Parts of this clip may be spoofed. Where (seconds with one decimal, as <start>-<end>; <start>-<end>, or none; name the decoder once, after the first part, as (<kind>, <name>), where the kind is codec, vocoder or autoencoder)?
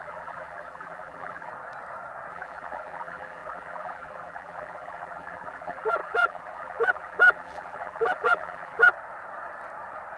0.0-1.5 (vocoder, BigVGAN v2); 2.3-8.9